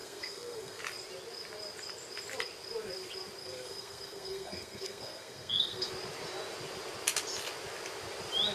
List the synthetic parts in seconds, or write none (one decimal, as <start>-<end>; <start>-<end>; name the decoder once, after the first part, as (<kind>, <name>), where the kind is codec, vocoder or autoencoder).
0.0-0.8 (codec, SNAC); 3.4-5.9